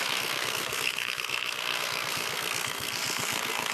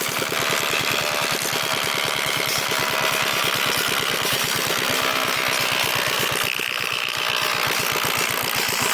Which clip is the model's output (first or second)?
first